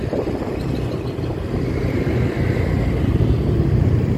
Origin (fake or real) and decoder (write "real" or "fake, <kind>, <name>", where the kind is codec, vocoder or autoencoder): real